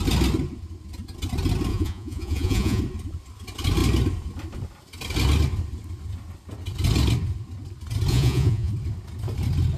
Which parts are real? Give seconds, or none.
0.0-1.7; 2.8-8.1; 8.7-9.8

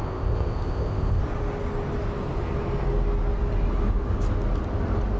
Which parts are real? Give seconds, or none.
1.2-5.2

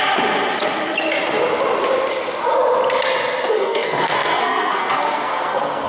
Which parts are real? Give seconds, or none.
0.0-3.5

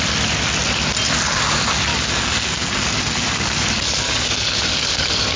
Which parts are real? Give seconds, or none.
0.0-1.9

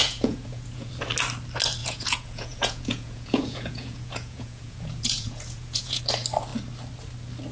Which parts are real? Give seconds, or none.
0.9-1.8; 6.0-7.5

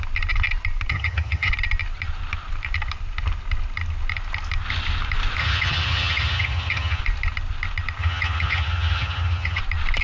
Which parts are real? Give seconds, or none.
0.0-0.9; 1.5-5.4; 7.0-8.0; 9.6-10.0

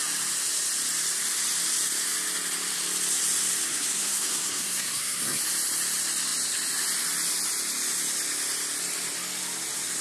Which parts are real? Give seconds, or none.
0.0-3.7; 5.4-10.0

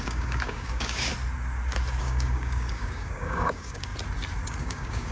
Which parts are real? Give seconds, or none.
1.1-2.0; 3.9-4.6